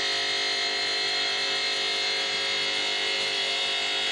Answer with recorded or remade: recorded